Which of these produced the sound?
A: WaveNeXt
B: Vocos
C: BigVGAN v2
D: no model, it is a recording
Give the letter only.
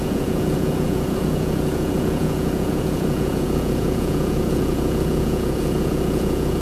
B